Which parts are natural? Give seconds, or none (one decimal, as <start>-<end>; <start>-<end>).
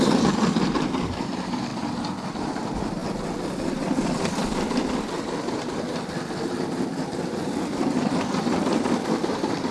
1.7-2.3; 3.0-3.7; 4.4-9.2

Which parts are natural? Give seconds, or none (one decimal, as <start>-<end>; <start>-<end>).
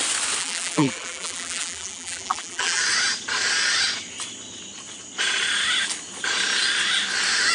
0.0-0.4; 2.8-7.5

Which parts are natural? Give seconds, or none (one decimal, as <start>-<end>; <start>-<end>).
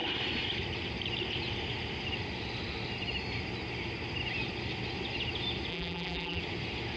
0.0-5.7; 6.4-7.0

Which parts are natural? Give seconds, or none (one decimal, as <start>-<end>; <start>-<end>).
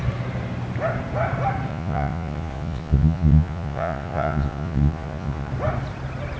0.0-1.7; 5.5-6.4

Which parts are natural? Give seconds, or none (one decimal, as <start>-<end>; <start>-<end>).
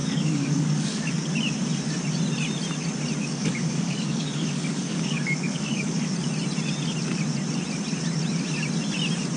1.1-3.2; 6.1-9.4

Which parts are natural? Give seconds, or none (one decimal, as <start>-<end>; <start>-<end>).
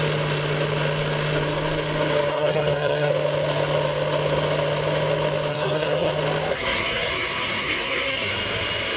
0.0-2.3; 3.1-5.5; 6.1-6.5; 8.3-9.0